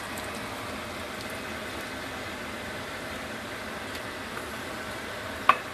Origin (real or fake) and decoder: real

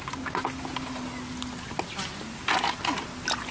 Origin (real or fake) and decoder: real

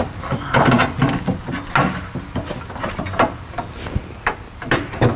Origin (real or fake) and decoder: real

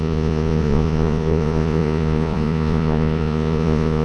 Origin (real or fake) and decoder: fake, vocoder, Vocos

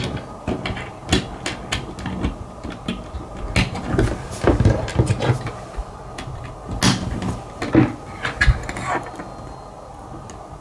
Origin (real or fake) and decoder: real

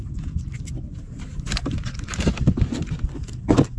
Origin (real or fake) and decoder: real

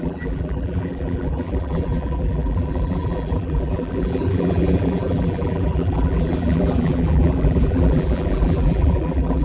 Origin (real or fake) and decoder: fake, vocoder, BigVGAN v2